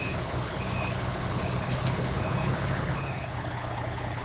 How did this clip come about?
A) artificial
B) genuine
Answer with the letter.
A